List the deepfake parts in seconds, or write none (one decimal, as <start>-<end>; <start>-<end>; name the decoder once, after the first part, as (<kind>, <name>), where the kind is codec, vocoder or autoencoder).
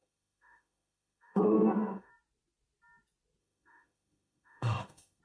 0.0-2.1 (autoencoder, DAC-VAE); 3.4-5.2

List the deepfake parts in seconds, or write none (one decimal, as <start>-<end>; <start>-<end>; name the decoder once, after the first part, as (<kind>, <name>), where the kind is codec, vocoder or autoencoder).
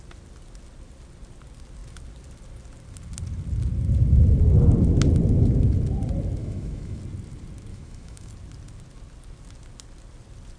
6.4-7.0 (autoencoder, DAC-VAE); 7.7-8.3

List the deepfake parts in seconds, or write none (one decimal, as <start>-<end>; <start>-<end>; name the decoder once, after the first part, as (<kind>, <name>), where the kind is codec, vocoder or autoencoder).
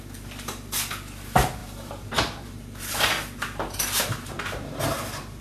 1.6-4.8 (vocoder, BigVGAN v2)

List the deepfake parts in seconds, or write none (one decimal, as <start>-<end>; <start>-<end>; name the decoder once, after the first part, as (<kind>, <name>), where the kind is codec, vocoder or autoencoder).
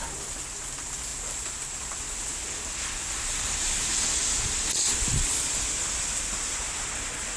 none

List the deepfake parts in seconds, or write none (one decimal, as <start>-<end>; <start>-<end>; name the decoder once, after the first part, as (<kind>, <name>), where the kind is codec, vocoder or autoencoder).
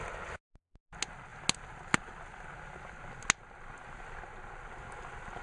none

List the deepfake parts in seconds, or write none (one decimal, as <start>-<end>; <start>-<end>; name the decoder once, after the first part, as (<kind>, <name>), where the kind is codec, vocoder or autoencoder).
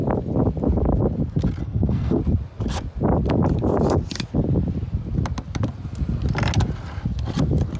1.6-2.2 (codec, SNAC)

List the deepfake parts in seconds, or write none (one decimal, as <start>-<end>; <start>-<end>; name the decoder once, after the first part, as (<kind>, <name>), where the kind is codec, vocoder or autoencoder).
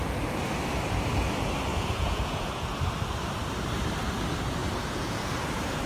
1.7-2.5 (vocoder, Vocos); 4.6-5.3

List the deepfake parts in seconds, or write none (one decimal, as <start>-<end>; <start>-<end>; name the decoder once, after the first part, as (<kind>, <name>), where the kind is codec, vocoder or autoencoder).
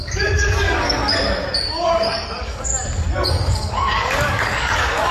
0.0-1.0 (codec, DAC); 1.6-2.7; 3.3-5.1